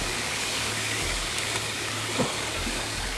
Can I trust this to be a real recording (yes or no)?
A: no